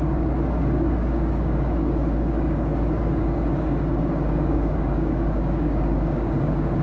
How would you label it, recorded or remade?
remade